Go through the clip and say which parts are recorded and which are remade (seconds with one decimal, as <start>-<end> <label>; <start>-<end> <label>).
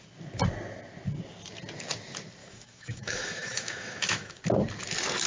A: 0.0-2.4 recorded; 2.4-4.4 remade; 4.4-5.3 recorded